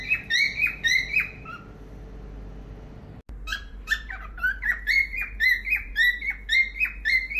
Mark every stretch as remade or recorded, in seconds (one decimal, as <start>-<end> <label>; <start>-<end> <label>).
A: 0.0-3.5 recorded; 3.5-6.3 remade; 6.3-7.4 recorded